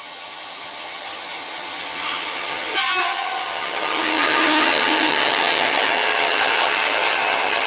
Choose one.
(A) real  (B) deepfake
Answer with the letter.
B